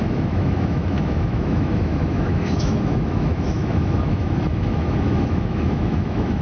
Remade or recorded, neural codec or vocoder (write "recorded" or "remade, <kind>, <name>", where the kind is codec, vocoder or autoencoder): remade, autoencoder, DAC-VAE